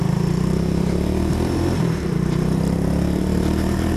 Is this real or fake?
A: fake